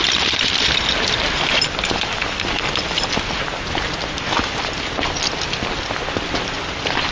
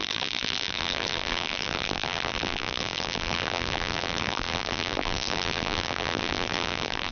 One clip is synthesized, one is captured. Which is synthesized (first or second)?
second